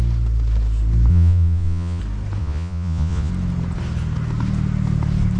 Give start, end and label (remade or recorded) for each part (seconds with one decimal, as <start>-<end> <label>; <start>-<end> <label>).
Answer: 0.0-1.1 recorded; 1.1-2.0 remade; 2.0-2.4 recorded; 2.4-3.3 remade; 3.3-5.4 recorded